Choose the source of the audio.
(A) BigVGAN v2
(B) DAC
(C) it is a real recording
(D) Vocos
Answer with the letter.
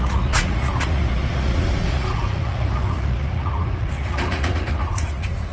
D